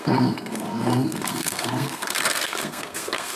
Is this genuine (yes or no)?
no